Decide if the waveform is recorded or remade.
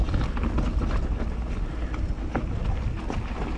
recorded